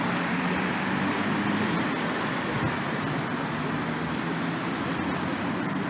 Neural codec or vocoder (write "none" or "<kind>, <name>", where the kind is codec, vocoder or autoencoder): none